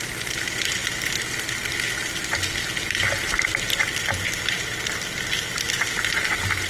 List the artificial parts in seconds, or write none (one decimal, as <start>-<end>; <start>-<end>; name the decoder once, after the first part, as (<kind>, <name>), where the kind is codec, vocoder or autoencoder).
none